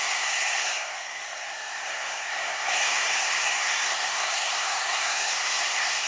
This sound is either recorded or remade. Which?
remade